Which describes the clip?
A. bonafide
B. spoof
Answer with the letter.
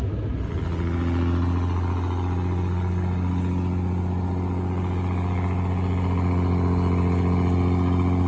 A